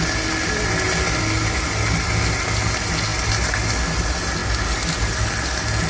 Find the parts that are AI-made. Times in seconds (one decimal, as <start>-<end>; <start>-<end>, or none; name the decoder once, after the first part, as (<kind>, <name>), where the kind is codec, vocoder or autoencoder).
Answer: none